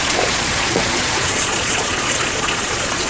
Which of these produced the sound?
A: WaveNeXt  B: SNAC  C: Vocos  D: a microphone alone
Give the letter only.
C